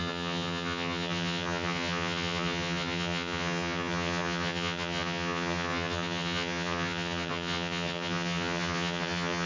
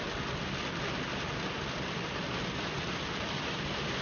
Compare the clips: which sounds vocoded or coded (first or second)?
first